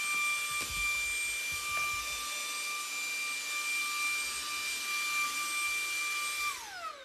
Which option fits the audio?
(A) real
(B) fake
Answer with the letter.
A